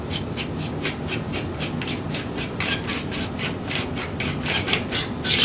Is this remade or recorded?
recorded